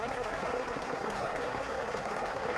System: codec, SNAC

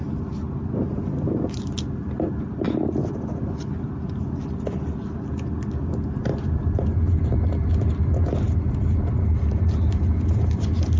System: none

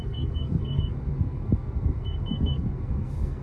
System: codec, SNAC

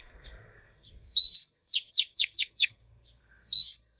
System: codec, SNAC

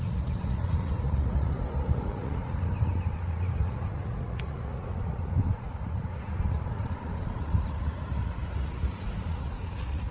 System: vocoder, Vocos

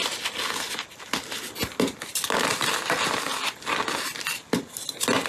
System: none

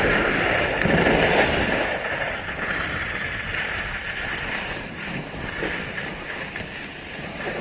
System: none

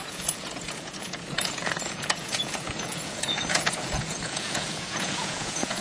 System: vocoder, Vocos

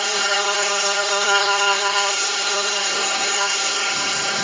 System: codec, SNAC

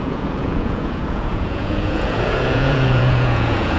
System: vocoder, Vocos